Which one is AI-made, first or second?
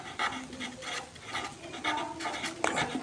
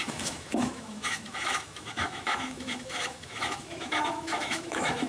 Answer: second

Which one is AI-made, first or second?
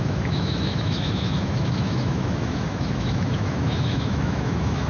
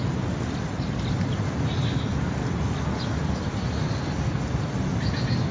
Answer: first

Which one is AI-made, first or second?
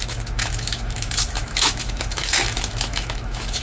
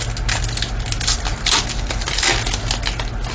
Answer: first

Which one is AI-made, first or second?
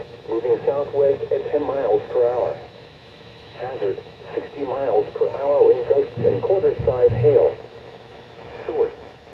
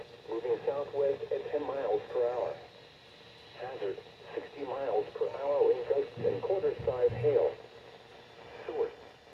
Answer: first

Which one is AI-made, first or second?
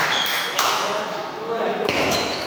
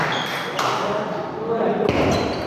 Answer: first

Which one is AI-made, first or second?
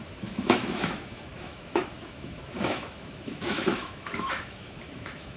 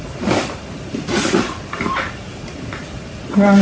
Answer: first